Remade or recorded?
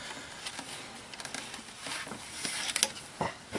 recorded